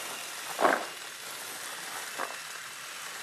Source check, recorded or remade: recorded